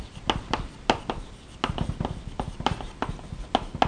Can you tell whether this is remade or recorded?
recorded